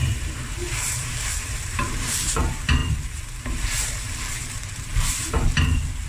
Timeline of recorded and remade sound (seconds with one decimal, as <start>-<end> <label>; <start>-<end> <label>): 0.0-6.1 remade